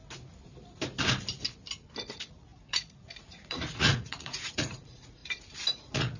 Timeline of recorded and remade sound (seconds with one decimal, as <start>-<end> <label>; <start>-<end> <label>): 0.0-2.0 recorded; 2.0-5.2 remade; 5.2-5.8 recorded; 5.8-6.2 remade